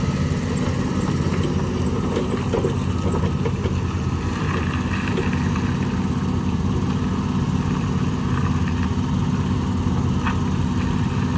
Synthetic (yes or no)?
no